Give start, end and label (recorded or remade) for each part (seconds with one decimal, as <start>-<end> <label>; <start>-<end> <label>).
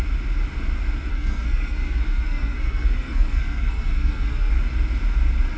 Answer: 0.0-1.1 recorded; 1.1-4.5 remade; 4.5-5.6 recorded